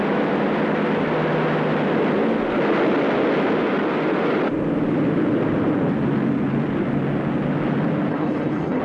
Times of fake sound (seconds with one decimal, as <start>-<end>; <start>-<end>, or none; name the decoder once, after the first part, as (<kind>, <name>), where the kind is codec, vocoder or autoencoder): 8.1-8.8 (codec, HILCodec)